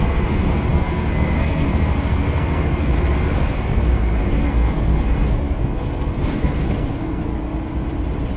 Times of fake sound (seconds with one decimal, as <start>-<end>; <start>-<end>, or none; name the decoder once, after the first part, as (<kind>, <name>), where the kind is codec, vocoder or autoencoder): 0.0-7.3 (codec, SNAC)